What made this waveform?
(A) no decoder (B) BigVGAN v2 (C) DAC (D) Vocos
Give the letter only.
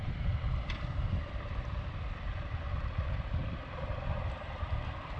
B